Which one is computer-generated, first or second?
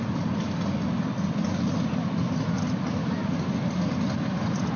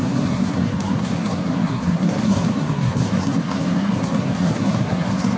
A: second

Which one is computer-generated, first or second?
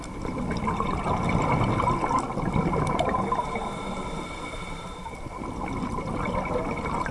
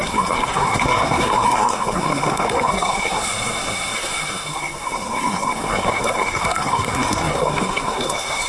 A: second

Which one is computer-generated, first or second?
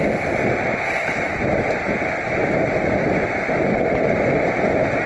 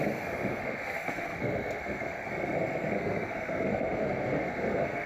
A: second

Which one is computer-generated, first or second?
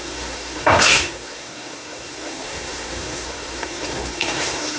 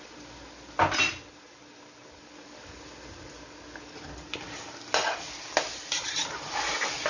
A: first